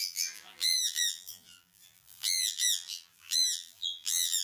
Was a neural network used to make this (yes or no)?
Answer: yes